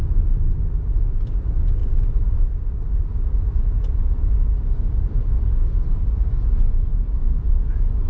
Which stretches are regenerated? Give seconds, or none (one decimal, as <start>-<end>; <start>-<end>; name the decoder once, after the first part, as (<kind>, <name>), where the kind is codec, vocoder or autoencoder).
1.8-2.4 (vocoder, BigVGAN v2); 6.9-7.5